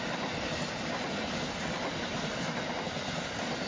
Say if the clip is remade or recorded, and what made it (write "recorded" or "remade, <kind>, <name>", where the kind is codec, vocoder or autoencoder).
recorded